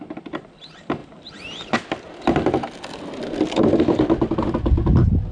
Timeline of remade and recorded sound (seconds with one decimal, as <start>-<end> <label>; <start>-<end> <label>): 0.0-5.3 recorded

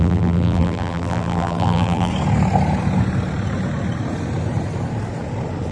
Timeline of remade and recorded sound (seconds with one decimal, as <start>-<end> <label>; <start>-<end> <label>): 0.0-2.1 remade; 2.1-5.7 recorded

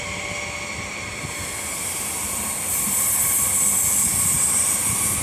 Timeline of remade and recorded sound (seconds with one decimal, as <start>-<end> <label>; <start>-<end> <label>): 0.0-5.2 recorded

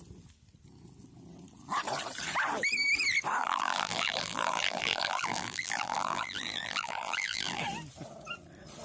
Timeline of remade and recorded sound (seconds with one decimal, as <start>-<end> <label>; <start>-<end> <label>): 0.0-3.4 recorded; 3.4-7.6 remade; 7.6-8.8 recorded

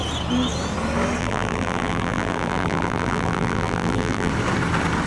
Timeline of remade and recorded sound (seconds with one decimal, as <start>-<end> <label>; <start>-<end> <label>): 0.0-1.2 recorded; 1.2-4.3 remade; 4.3-5.1 recorded

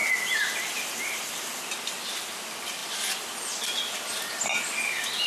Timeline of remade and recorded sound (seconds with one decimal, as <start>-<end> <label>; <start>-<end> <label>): 0.0-5.3 recorded

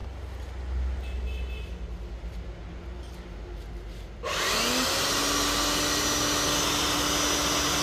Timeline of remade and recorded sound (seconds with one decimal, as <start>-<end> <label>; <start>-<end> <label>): 0.0-7.8 recorded

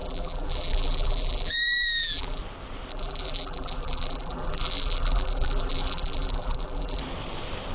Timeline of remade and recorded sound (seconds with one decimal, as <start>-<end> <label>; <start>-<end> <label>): 0.0-2.4 remade; 2.4-2.9 recorded; 2.9-7.0 remade; 7.0-7.7 recorded